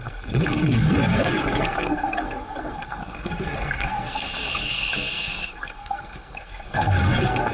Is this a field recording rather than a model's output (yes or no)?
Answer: no